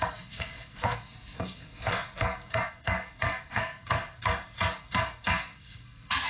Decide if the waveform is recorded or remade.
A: remade